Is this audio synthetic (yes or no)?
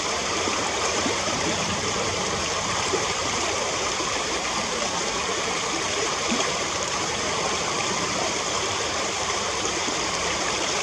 yes